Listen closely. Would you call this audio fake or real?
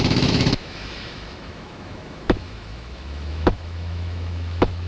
fake